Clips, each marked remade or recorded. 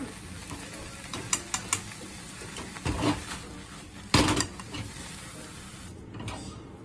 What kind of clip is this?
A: recorded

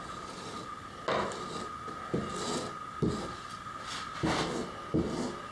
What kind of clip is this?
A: recorded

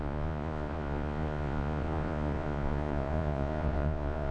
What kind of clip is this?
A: remade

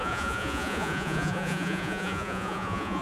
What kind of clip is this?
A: remade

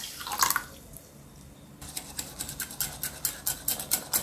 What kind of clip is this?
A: recorded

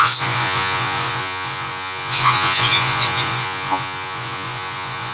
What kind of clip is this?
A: remade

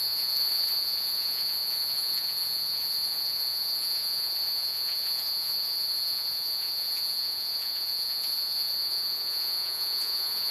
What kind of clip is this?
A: remade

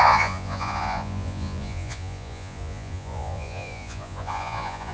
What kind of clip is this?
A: remade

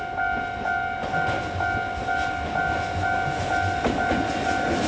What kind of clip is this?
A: recorded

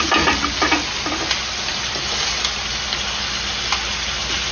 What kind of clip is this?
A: recorded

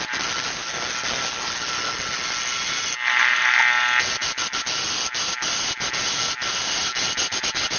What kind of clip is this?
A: recorded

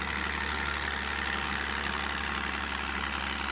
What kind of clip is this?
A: recorded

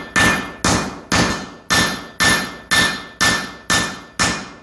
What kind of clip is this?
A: recorded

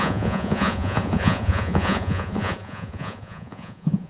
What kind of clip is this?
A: remade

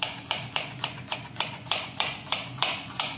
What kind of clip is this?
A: remade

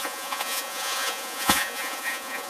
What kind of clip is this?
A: remade